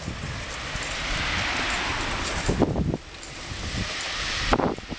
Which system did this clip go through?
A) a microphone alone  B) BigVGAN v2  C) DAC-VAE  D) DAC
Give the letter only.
B